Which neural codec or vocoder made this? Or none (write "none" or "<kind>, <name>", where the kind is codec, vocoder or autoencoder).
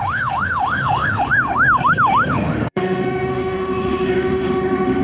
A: autoencoder, DAC-VAE